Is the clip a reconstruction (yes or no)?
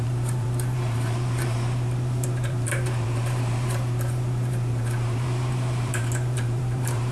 yes